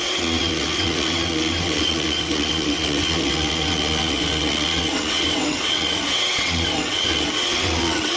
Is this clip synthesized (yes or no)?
yes